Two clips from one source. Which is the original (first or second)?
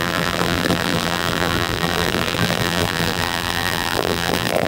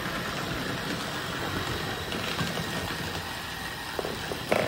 second